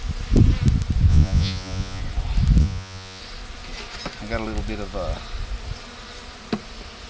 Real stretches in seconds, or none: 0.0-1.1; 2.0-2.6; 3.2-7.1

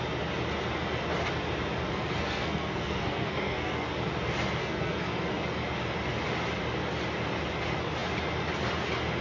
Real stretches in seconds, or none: 0.0-1.9; 3.9-4.6; 5.3-9.2

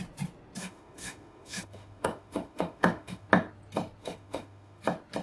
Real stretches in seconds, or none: 0.0-0.6; 3.3-4.0; 4.8-5.2

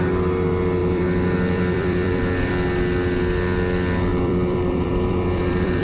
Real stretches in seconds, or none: 0.0-0.8; 2.5-4.1

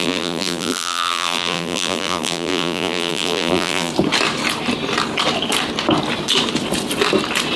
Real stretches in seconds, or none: 3.9-7.6

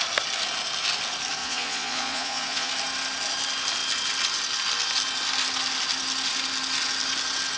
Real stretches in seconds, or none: 0.0-1.4; 2.7-7.6

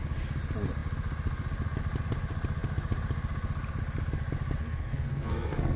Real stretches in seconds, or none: 0.0-4.6

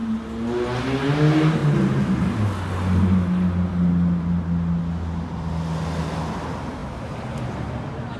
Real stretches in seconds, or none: 0.0-8.2